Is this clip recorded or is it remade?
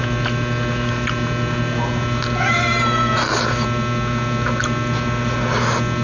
recorded